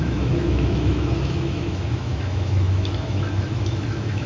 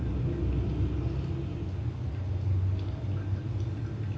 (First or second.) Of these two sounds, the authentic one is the second